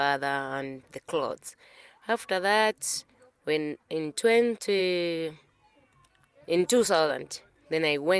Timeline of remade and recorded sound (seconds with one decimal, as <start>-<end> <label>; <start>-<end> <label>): 0.0-6.6 recorded; 6.6-7.1 remade; 7.1-8.2 recorded

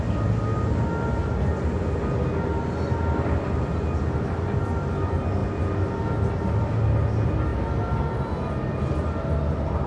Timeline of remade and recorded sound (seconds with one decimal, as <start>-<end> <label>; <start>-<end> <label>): 0.0-9.9 recorded

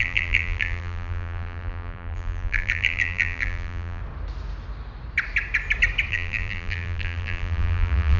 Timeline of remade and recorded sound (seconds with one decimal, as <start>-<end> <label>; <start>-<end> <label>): 0.0-4.0 remade; 4.0-6.1 recorded; 6.1-8.2 remade

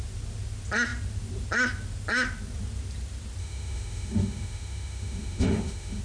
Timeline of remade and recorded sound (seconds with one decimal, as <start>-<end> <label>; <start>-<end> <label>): 0.0-3.4 recorded; 3.4-6.0 remade

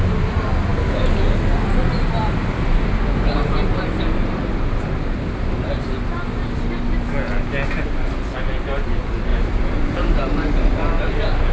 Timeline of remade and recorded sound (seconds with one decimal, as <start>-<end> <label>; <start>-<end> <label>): 0.0-9.3 recorded; 9.3-10.2 remade; 10.2-11.5 recorded